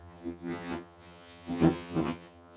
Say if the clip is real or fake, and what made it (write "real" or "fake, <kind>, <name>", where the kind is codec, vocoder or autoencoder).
fake, vocoder, HiFi-GAN